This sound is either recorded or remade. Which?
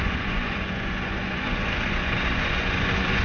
remade